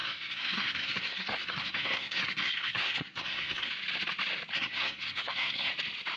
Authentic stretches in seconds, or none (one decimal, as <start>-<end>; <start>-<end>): 3.7-4.5; 5.7-6.2